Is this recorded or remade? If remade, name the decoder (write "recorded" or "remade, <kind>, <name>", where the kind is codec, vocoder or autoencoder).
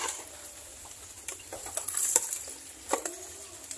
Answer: recorded